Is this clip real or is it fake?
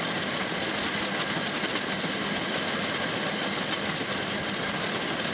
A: real